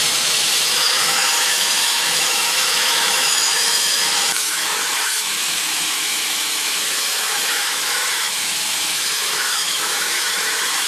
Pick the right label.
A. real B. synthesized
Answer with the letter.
B